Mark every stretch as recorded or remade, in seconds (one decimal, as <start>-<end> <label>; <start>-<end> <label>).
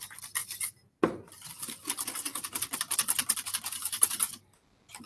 0.0-3.8 recorded; 3.8-4.3 remade; 4.3-5.1 recorded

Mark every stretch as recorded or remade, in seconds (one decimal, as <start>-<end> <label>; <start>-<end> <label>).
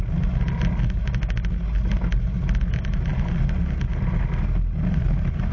0.0-5.5 recorded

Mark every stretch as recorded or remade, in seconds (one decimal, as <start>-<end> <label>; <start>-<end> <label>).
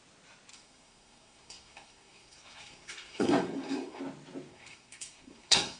0.0-0.5 recorded; 0.5-4.0 remade; 4.0-4.5 recorded; 4.5-5.8 remade